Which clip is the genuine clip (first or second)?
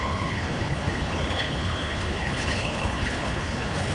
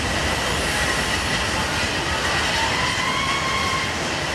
second